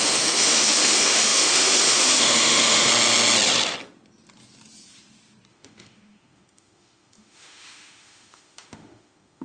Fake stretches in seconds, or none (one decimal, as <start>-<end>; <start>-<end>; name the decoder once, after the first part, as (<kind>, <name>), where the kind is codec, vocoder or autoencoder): 0.0-2.9 (autoencoder, DAC-VAE); 5.5-9.4

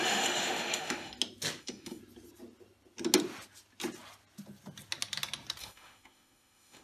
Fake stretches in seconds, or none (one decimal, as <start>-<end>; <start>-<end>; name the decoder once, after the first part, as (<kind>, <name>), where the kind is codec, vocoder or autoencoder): 0.0-1.1 (autoencoder, DAC-VAE); 1.6-2.0; 5.6-6.8

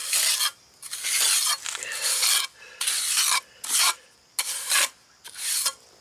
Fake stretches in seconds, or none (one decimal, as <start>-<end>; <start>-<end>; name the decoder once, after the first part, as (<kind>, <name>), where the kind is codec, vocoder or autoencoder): none

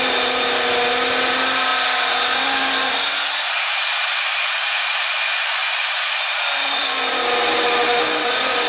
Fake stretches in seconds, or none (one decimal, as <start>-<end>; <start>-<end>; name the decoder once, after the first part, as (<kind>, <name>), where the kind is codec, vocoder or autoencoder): none

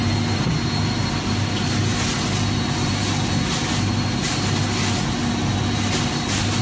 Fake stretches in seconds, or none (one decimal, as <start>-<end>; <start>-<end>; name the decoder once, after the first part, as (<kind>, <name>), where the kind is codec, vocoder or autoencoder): none

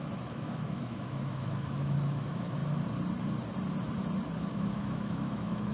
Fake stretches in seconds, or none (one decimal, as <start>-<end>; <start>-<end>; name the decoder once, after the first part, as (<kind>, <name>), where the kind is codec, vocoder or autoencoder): 0.0-2.6 (autoencoder, DAC-VAE); 4.5-5.7

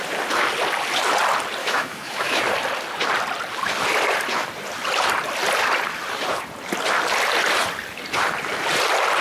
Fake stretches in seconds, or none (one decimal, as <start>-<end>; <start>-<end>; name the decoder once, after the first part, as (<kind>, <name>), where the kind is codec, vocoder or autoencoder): 1.6-2.4 (autoencoder, DAC-VAE)

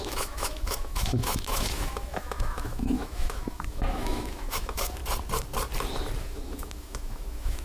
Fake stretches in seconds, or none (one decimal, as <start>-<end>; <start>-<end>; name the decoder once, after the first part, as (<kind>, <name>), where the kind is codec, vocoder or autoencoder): 0.0-5.0 (autoencoder, DAC-VAE); 6.2-7.6